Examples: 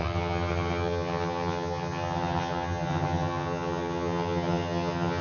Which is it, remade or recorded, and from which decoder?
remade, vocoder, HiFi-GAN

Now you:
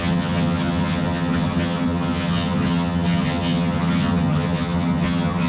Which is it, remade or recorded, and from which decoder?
remade, vocoder, HiFi-GAN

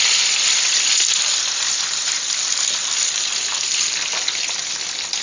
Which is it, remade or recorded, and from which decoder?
recorded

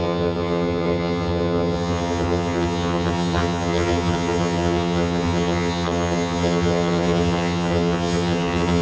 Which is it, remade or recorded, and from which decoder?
remade, vocoder, HiFi-GAN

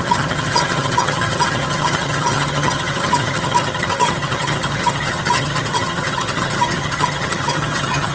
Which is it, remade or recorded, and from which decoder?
remade, vocoder, HiFi-GAN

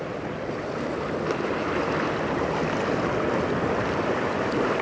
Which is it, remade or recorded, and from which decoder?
recorded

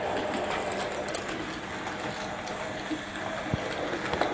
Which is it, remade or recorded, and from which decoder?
recorded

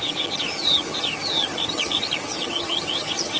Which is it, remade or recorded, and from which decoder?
remade, vocoder, HiFi-GAN